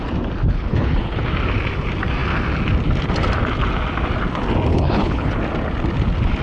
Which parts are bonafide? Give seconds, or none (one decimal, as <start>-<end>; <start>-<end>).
0.0-0.5; 1.2-4.7; 5.4-6.4